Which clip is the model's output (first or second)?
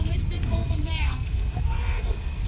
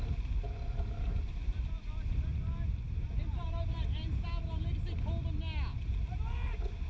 first